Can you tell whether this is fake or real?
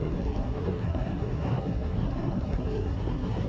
fake